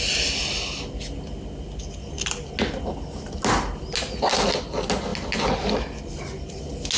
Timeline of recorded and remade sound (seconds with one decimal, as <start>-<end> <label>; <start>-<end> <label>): 0.0-7.0 recorded